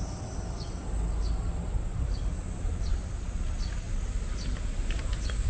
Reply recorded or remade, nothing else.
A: recorded